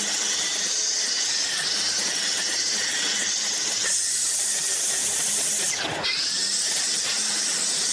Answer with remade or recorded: recorded